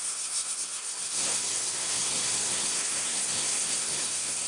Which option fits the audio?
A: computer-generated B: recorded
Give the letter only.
A